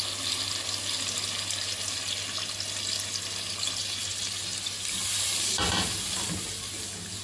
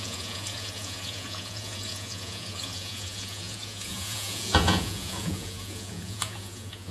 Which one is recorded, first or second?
first